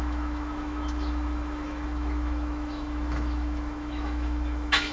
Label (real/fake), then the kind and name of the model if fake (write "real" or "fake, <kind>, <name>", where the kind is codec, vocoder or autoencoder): fake, autoencoder, DAC-VAE